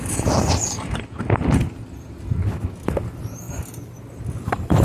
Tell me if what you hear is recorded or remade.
recorded